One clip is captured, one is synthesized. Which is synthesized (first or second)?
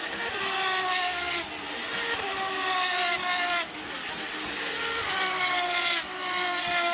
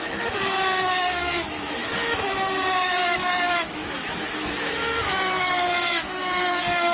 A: second